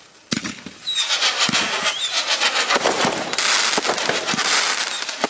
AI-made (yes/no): no